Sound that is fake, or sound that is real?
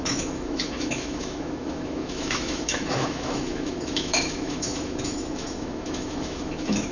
fake